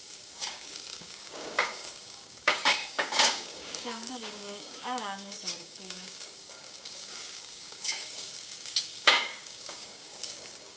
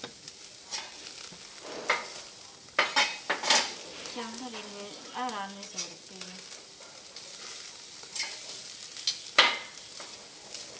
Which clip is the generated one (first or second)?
first